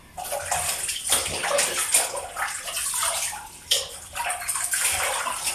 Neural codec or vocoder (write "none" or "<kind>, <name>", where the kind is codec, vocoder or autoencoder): none